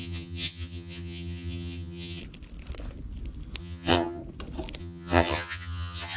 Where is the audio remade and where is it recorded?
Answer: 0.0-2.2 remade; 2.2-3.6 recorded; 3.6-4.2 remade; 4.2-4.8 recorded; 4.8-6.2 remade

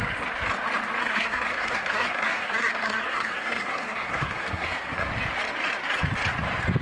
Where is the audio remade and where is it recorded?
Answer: 0.0-1.0 recorded; 1.0-5.1 remade; 5.1-6.8 recorded

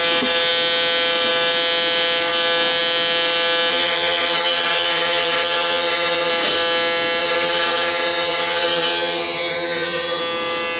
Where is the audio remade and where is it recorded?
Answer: 0.0-3.7 recorded; 3.7-6.3 remade; 6.3-7.2 recorded; 7.2-10.2 remade; 10.2-10.8 recorded

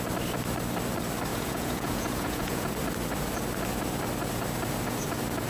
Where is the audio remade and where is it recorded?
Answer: 0.0-1.3 recorded; 1.3-2.7 remade; 2.7-5.5 recorded